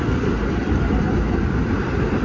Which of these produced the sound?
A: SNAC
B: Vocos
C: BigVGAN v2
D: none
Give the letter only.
D